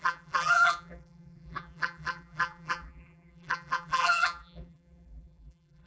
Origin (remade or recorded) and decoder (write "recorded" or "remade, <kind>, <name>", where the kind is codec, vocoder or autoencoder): remade, vocoder, BigVGAN v2